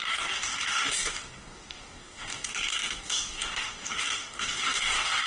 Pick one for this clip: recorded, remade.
remade